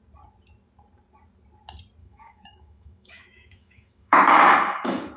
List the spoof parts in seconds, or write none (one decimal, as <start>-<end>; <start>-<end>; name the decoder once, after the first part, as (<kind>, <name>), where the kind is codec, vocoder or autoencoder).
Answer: 2.0-5.2 (autoencoder, DAC-VAE)